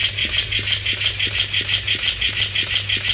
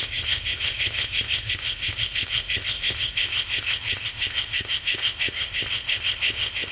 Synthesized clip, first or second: second